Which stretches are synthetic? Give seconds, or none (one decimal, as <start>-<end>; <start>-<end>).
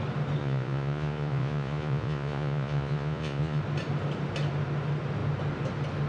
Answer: 0.4-3.6